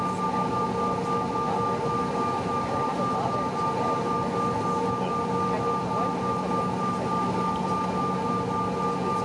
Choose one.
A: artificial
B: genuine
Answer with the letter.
B